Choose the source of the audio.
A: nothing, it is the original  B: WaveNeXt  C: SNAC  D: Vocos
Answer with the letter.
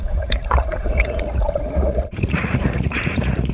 D